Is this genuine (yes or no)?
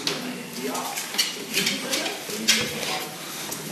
yes